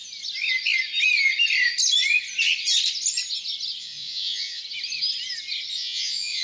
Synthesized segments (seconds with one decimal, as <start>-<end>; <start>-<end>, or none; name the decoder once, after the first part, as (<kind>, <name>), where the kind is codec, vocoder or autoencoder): 3.8-4.6 (vocoder, Vocos); 5.7-6.4

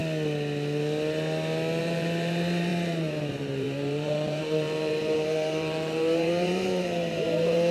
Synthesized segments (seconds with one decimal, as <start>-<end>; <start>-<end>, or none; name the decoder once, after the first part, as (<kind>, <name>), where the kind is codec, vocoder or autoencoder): 1.8-7.7 (vocoder, BigVGAN v2)

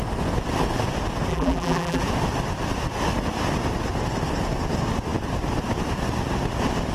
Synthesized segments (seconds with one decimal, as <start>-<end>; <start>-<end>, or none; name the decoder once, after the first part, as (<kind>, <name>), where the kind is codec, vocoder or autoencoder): 1.3-2.0 (vocoder, BigVGAN v2)

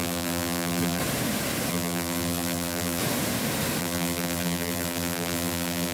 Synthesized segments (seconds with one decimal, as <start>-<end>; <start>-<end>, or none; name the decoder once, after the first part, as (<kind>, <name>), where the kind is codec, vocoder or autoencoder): 0.0-1.0 (vocoder, BigVGAN v2); 1.7-3.0; 3.8-5.9

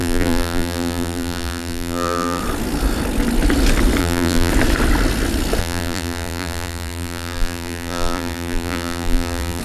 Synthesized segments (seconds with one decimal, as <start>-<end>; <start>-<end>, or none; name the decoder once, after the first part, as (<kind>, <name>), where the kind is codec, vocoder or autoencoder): 0.0-2.4 (vocoder, BigVGAN v2); 4.0-4.5; 5.6-9.6

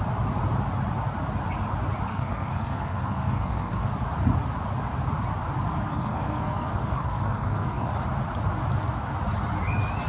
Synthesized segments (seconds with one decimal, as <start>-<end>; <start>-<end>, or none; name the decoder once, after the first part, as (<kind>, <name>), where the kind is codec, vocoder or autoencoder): 2.1-3.9 (codec, SNAC); 5.9-7.9

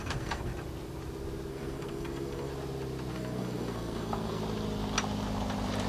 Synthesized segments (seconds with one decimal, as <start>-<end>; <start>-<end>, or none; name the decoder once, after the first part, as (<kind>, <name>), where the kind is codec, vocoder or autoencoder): 0.0-0.5 (codec, SNAC); 1.5-2.5; 3.1-4.4

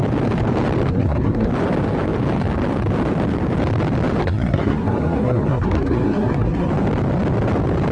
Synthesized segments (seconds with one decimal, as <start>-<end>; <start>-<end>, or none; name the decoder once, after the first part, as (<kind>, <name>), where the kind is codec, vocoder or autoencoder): 0.9-1.5 (codec, SNAC); 4.2-6.7